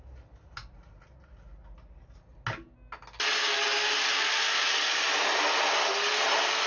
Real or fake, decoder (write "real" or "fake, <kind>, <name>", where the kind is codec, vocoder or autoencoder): real